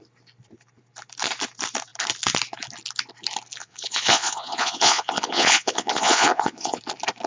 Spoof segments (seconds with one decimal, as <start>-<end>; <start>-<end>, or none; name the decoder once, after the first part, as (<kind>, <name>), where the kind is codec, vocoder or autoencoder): 3.6-6.8 (vocoder, Vocos)